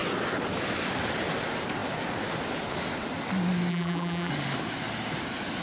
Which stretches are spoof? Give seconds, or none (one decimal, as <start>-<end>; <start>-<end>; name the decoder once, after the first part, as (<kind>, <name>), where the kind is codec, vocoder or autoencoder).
3.7-4.3 (vocoder, BigVGAN v2)